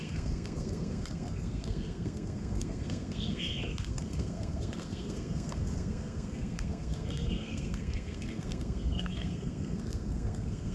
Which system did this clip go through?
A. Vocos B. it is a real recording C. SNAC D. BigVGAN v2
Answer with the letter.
C